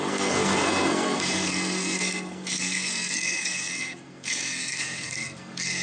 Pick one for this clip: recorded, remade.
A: remade